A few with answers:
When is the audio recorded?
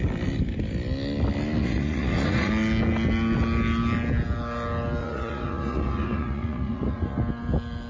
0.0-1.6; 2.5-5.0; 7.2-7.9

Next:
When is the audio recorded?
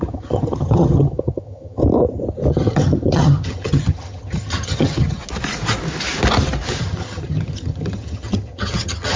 1.8-2.5; 5.2-6.8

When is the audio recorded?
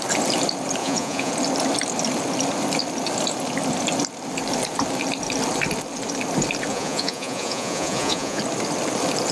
0.0-0.8; 1.3-6.7; 8.4-9.3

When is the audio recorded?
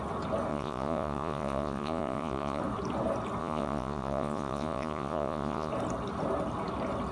0.0-0.5; 2.6-3.4; 5.7-7.1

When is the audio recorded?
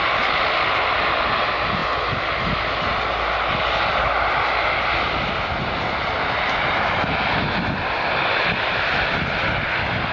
0.0-10.1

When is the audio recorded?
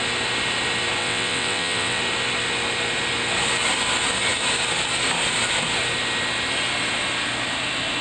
0.0-1.0; 2.0-8.0